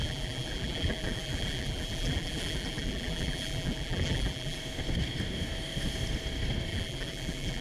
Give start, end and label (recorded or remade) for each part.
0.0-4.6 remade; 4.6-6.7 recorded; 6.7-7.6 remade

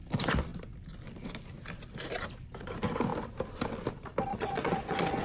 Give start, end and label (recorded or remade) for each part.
0.0-4.3 recorded; 4.3-5.2 remade

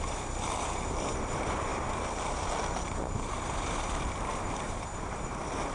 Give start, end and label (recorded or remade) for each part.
0.0-5.7 remade

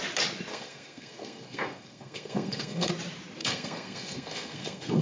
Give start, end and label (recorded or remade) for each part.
0.0-0.5 recorded; 0.5-2.9 remade; 2.9-3.4 recorded; 3.4-5.0 remade

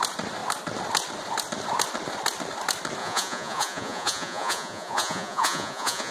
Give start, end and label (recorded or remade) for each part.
0.0-3.0 recorded; 3.0-6.1 remade

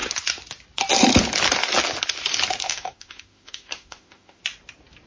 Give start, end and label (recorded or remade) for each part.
0.0-2.6 recorded; 2.6-4.4 remade; 4.4-5.1 recorded

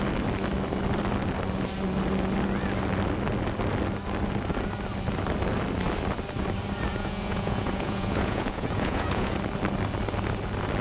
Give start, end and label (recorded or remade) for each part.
0.0-6.9 recorded; 6.9-9.3 remade; 9.3-10.8 recorded

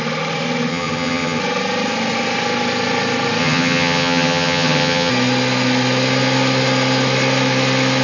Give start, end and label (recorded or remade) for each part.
0.0-0.7 recorded; 0.7-1.4 remade; 1.4-3.4 recorded; 3.4-5.1 remade; 5.1-8.0 recorded